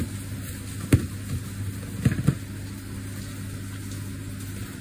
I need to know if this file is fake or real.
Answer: real